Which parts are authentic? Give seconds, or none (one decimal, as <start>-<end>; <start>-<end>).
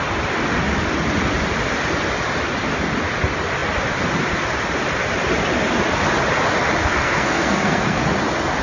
0.0-6.8; 8.0-8.6